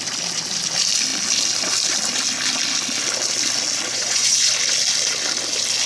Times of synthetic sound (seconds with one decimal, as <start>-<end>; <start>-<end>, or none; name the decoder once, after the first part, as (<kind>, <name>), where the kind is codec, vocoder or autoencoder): 3.9-4.5 (vocoder, Vocos)